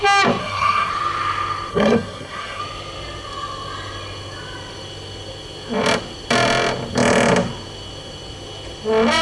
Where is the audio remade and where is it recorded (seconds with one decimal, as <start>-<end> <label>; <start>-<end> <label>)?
0.0-0.4 recorded; 0.4-0.9 remade; 0.9-1.7 recorded; 1.7-2.6 remade; 2.6-9.2 recorded